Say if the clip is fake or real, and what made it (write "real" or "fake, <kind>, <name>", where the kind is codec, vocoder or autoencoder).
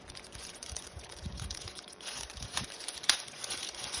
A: fake, vocoder, Vocos